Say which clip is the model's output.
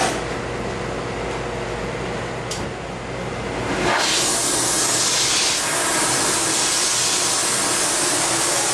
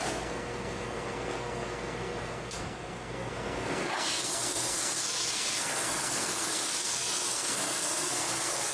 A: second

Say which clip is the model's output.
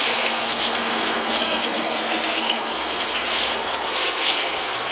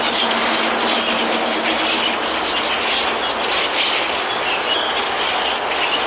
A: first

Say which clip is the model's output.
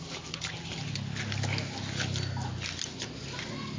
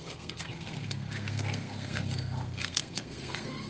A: second